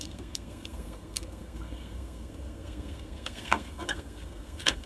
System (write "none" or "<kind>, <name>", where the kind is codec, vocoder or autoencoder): codec, SNAC